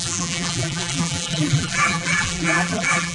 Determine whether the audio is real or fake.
fake